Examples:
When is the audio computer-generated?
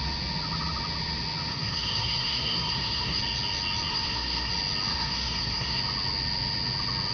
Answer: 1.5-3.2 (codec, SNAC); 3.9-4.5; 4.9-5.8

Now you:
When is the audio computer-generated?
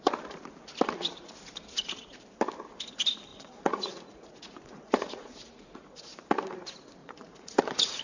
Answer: 3.3-6.1 (vocoder, Vocos); 7.0-8.0